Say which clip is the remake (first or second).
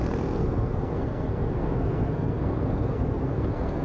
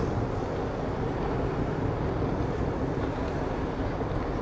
first